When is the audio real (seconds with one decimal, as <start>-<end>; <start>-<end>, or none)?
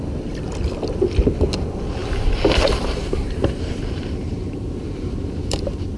0.0-2.0; 5.6-6.0